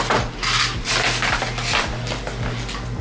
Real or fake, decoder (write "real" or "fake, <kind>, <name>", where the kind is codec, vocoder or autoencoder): real